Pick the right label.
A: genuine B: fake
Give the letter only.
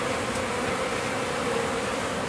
A